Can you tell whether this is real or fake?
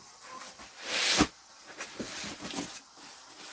real